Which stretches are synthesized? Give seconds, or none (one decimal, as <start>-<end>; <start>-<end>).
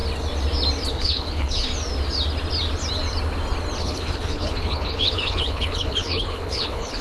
0.9-1.7; 3.8-7.0